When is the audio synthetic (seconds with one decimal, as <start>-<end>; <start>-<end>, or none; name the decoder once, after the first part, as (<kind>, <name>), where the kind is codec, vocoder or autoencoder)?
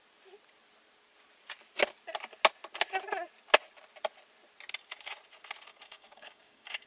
5.7-6.9 (codec, DAC)